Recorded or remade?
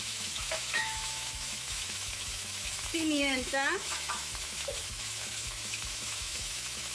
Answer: remade